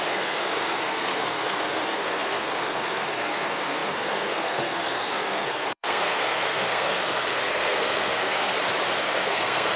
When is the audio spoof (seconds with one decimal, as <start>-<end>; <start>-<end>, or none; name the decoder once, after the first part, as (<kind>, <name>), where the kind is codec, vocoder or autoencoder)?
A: 0.0-8.5 (codec, SNAC); 9.0-9.8